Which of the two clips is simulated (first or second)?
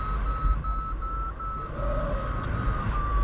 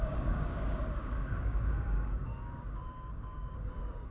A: second